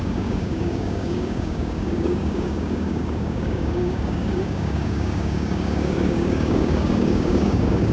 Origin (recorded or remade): remade